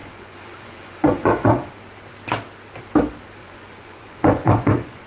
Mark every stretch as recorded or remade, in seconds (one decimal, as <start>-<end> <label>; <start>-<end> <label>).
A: 0.0-1.7 remade; 1.7-3.4 recorded; 3.4-5.1 remade